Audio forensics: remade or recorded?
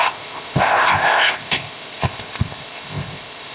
remade